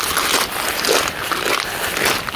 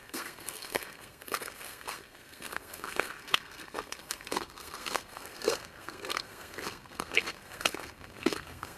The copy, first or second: second